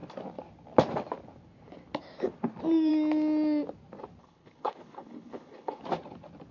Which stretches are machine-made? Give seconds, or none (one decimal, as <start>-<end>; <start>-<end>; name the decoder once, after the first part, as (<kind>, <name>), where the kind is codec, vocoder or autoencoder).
4.2-5.8 (codec, HILCodec)